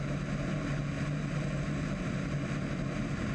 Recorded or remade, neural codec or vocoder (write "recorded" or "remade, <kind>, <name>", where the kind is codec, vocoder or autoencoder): recorded